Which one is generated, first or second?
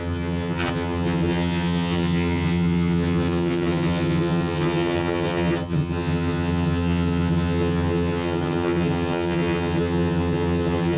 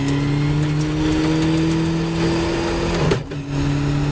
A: first